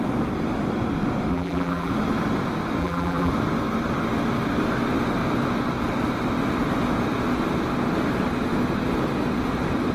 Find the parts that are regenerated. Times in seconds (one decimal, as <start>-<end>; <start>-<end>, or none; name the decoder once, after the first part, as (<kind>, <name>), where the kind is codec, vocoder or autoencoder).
1.3-1.9 (vocoder, BigVGAN v2); 2.8-3.3